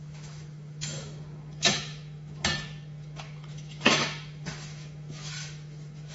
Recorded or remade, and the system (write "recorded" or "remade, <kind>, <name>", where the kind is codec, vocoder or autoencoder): remade, autoencoder, DAC-VAE